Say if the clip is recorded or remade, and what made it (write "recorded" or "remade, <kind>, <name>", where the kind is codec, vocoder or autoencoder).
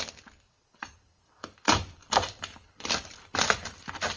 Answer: remade, vocoder, BigVGAN v2